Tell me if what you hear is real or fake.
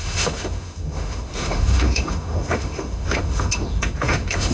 fake